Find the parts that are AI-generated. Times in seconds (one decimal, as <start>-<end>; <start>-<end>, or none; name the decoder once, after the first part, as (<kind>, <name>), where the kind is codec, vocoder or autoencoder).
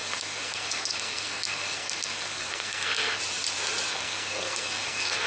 0.0-3.2 (codec, SNAC); 3.9-5.3